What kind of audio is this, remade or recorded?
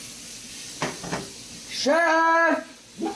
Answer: recorded